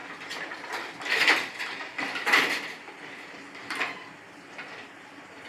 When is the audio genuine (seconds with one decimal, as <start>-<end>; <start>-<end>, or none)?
0.0-5.5